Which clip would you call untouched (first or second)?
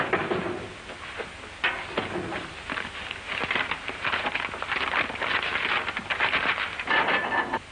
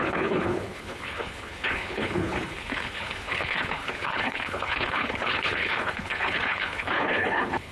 first